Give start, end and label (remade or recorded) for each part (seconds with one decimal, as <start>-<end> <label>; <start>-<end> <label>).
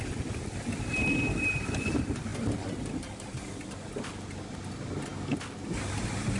0.0-6.4 recorded